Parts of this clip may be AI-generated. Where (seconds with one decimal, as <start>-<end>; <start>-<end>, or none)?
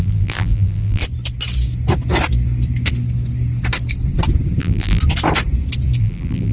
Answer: 0.0-1.0; 4.6-5.0; 6.0-6.5